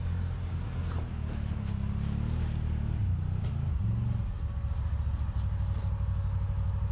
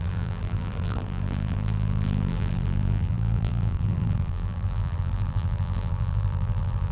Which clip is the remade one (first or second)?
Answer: second